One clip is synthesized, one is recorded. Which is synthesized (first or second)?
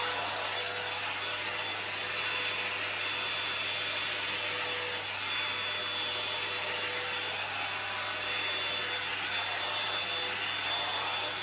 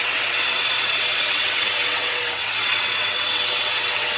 second